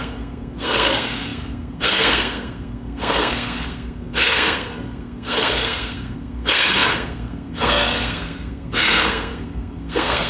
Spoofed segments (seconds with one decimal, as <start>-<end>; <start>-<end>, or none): 0.0-10.3